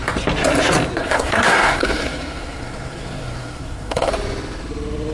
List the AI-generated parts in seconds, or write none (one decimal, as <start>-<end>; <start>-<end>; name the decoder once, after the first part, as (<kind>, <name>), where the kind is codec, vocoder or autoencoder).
1.0-4.1 (codec, SNAC)